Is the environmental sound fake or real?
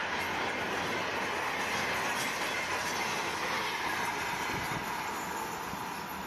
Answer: real